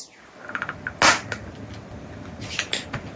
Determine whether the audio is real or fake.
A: real